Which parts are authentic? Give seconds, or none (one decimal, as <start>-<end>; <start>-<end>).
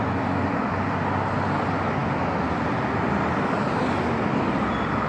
0.0-5.1